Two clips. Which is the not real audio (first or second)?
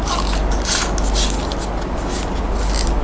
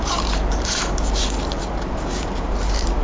second